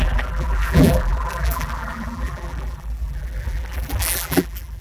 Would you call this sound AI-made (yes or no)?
yes